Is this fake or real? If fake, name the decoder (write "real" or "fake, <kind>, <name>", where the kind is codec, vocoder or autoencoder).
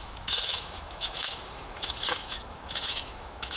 fake, autoencoder, DAC-VAE